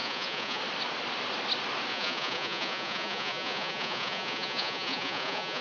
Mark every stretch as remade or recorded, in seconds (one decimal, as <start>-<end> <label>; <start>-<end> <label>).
0.0-0.6 remade; 0.6-1.9 recorded; 1.9-5.6 remade